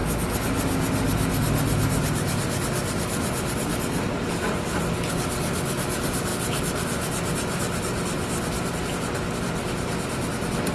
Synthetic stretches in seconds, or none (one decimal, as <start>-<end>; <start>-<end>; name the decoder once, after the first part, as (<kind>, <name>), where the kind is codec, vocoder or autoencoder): none